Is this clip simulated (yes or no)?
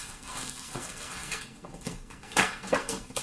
yes